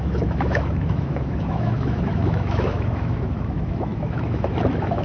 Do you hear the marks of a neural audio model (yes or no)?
yes